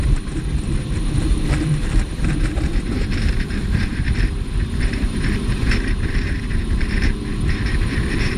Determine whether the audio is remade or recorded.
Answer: remade